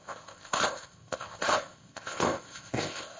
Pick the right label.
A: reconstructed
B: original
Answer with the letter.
A